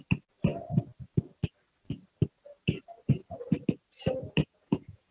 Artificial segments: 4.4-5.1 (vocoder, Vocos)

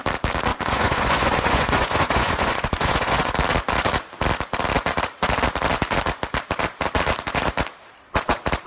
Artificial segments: 0.5-3.3 (vocoder, Vocos)

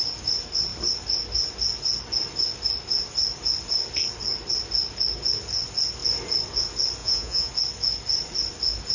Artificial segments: 7.0-7.5 (vocoder, Vocos)

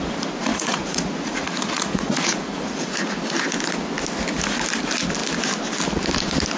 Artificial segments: 0.5-3.2 (vocoder, Vocos)